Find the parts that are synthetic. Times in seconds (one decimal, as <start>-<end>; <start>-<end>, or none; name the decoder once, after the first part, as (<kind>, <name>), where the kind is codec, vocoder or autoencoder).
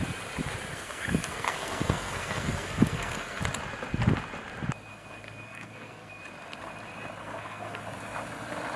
0.7-3.4 (codec, SNAC); 4.9-6.2; 7.2-7.8